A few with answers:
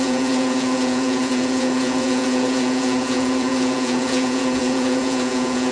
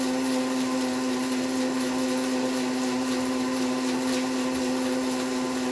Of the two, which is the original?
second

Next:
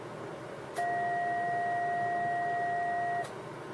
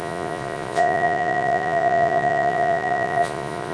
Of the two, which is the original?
first